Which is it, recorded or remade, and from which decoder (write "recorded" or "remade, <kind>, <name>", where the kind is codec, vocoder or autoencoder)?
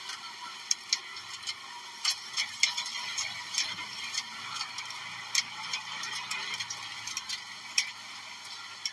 recorded